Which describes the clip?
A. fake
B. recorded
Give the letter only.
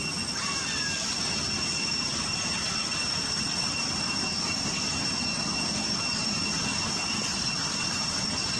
B